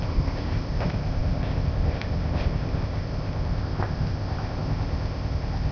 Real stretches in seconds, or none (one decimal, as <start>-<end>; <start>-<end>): none